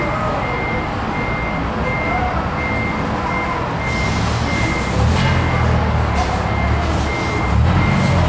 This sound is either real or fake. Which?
real